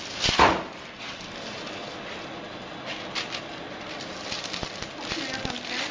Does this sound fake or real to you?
real